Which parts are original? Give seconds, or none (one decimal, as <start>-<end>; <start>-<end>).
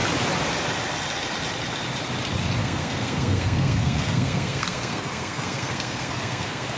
0.0-2.6